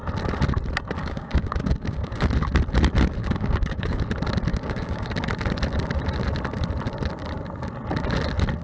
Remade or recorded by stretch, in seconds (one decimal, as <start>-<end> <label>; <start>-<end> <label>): 0.0-1.0 recorded; 1.0-2.3 remade; 2.3-3.2 recorded; 3.2-4.0 remade; 4.0-4.5 recorded; 4.5-5.1 remade; 5.1-8.6 recorded